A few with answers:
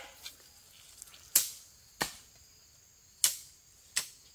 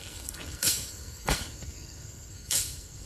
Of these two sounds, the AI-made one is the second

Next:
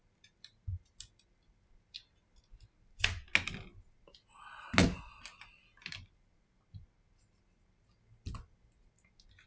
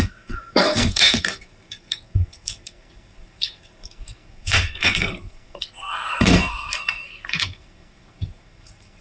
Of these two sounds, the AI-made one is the second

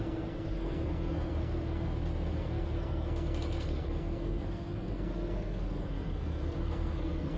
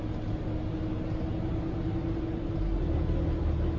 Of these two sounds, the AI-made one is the first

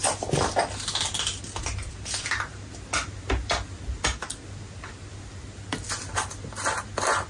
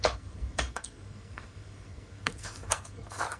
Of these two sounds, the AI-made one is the second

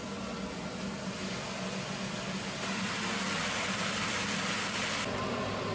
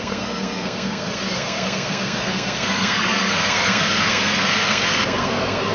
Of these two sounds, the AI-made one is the second